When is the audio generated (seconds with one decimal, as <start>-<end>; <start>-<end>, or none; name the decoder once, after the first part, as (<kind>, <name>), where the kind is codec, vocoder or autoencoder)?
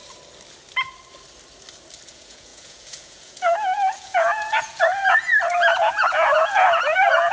2.1-7.3 (vocoder, Vocos)